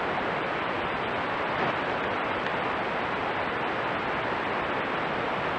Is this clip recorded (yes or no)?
yes